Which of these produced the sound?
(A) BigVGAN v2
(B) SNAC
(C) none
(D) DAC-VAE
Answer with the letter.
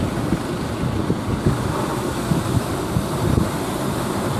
C